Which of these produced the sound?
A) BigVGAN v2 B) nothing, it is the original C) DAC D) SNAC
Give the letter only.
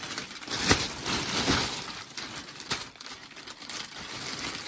A